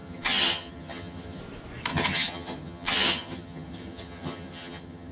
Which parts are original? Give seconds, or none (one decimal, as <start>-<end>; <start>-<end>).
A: 1.4-1.9